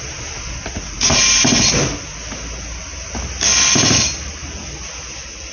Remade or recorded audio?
recorded